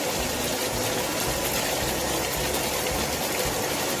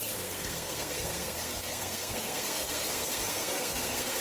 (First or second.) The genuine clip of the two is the first